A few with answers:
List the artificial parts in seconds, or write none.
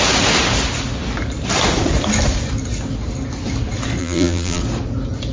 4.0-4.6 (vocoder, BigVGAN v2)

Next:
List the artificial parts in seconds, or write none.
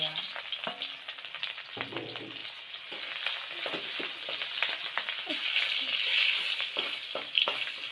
none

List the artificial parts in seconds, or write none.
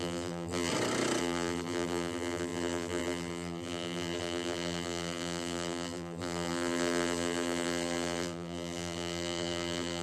0.0-0.7 (vocoder, BigVGAN v2); 1.2-10.0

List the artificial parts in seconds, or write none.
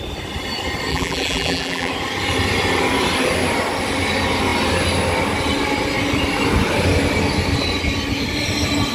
0.9-1.9 (vocoder, BigVGAN v2)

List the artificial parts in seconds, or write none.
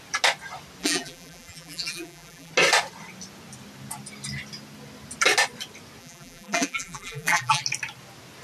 0.8-2.5 (vocoder, BigVGAN v2); 6.0-7.6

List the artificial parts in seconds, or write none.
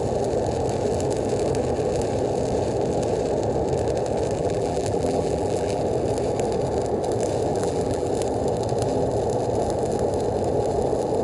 4.4-5.8 (vocoder, BigVGAN v2); 7.5-8.1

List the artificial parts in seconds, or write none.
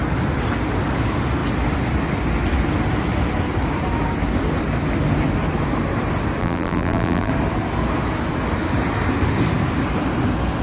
6.4-7.3 (vocoder, BigVGAN v2)